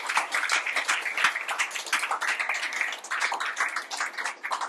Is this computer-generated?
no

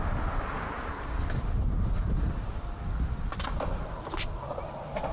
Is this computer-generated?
no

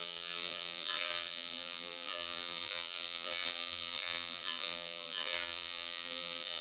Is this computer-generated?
yes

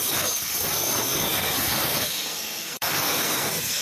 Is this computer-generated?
yes